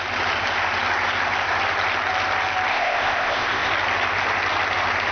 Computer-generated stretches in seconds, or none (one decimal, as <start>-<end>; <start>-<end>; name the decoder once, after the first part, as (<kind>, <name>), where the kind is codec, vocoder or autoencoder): 2.7-3.7 (codec, ZipCodec)